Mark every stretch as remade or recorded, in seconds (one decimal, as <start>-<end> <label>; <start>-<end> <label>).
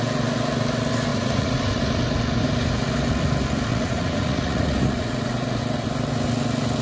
0.0-1.1 recorded; 1.1-1.8 remade; 1.8-3.7 recorded; 3.7-5.6 remade; 5.6-6.8 recorded